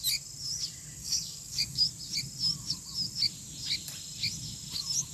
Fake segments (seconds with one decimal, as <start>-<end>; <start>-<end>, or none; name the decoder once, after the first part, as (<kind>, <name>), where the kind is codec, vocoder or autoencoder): 1.0-1.8 (codec, DAC)